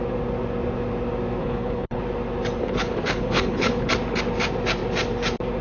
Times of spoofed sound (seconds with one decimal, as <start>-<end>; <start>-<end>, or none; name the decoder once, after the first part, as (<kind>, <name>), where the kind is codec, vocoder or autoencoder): 1.4-2.0 (codec, HILCodec); 2.6-3.9